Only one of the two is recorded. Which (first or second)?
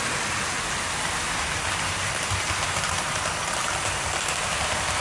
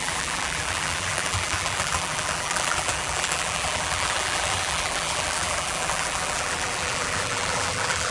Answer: first